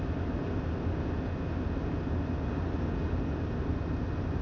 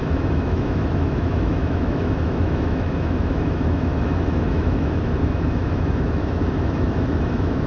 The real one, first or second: first